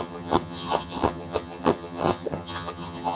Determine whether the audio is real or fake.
fake